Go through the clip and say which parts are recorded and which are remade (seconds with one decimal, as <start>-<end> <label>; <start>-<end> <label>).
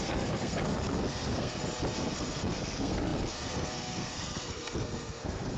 0.0-1.6 remade; 1.6-2.1 recorded; 2.1-5.6 remade